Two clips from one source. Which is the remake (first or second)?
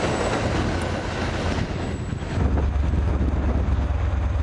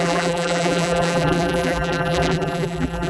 second